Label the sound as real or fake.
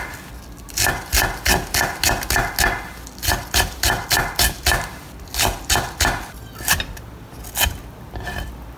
real